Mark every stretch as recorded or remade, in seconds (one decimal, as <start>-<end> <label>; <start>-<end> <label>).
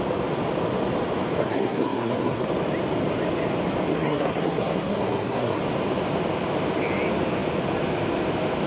0.0-1.4 recorded; 1.4-2.5 remade; 2.5-3.9 recorded; 3.9-5.6 remade; 5.6-8.7 recorded